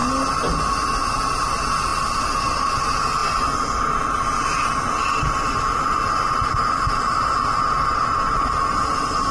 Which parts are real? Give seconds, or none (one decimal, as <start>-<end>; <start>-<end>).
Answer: 0.0-9.3